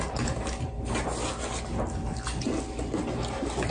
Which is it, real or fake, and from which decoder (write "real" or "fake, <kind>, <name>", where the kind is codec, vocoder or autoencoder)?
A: real